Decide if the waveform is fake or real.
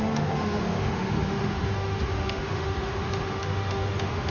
fake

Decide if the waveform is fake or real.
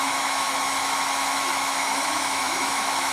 fake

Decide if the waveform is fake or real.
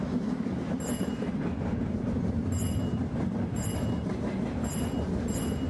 real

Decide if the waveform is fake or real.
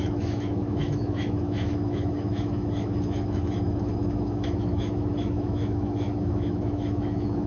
fake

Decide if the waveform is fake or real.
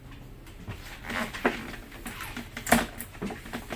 real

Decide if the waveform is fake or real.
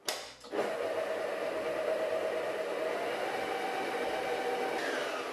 real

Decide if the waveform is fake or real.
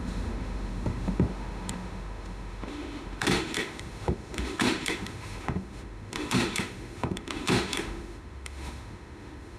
fake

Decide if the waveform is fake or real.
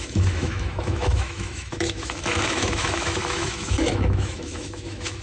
fake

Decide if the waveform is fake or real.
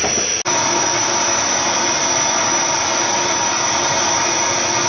real